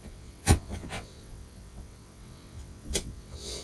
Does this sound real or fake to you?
fake